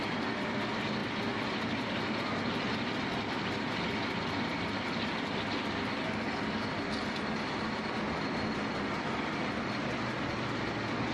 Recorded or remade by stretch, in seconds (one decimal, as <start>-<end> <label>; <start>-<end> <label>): 0.0-11.1 recorded